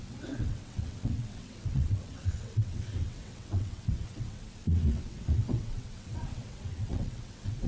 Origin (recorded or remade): remade